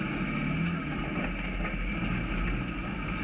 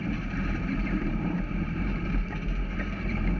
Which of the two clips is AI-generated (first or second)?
second